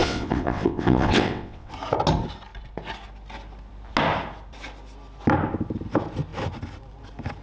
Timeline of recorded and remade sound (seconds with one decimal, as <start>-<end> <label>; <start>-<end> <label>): 0.0-1.7 remade; 1.7-7.4 recorded